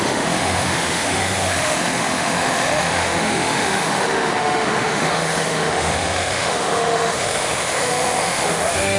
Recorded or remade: remade